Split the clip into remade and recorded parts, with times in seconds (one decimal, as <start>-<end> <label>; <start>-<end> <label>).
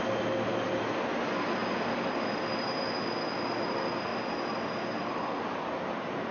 0.0-6.3 recorded